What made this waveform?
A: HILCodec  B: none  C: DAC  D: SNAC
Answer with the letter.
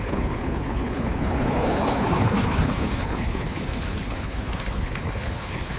A